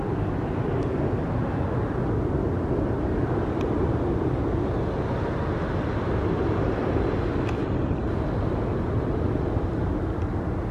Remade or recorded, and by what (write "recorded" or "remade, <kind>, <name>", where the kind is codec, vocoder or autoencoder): recorded